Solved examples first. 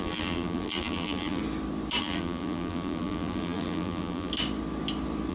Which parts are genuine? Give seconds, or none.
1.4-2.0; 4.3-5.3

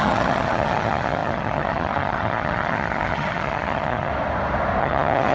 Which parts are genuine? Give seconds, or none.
4.1-4.8

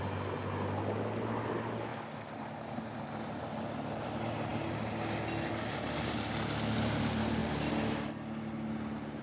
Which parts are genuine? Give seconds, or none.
0.0-9.2